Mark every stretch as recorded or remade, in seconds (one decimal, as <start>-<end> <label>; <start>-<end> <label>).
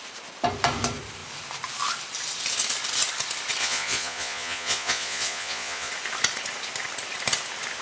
0.0-3.6 recorded; 3.6-5.9 remade; 5.9-7.8 recorded